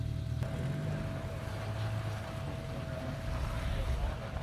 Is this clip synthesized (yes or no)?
no